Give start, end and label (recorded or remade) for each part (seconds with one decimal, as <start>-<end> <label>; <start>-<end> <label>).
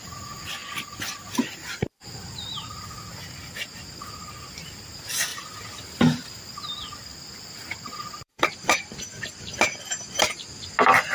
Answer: 0.0-0.6 recorded; 0.6-3.1 remade; 3.1-5.3 recorded; 5.3-6.5 remade; 6.5-7.1 recorded; 7.1-9.0 remade; 9.0-11.1 recorded